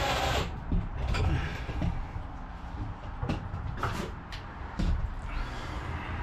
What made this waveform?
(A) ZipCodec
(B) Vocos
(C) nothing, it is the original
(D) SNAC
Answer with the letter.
C